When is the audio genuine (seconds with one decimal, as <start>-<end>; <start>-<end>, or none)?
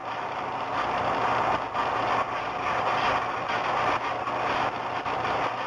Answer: 0.6-5.7